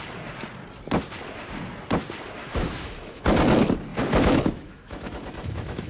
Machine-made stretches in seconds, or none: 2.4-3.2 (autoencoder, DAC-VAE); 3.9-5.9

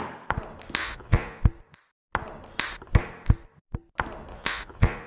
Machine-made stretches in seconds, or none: 0.8-1.4 (vocoder, Vocos); 4.3-5.1

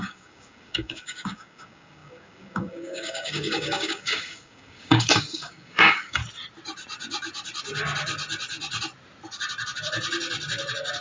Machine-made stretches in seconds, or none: 0.0-6.2 (codec, DAC)

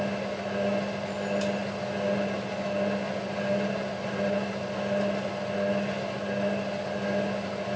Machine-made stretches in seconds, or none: none